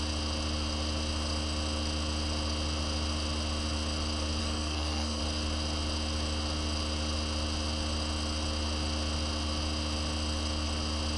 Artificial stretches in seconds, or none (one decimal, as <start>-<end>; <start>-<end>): 4.4-5.2